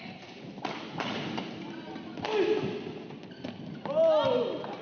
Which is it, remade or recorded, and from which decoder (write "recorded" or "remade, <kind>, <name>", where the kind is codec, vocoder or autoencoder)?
recorded